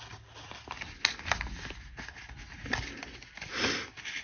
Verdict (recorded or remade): recorded